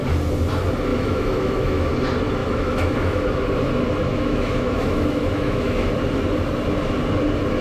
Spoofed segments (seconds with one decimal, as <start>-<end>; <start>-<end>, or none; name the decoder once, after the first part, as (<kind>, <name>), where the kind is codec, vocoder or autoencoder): 0.9-1.9 (autoencoder, DAC-VAE); 2.4-3.3; 4.1-5.9